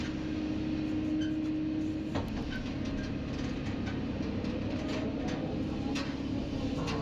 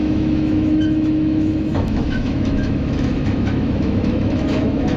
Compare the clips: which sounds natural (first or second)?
first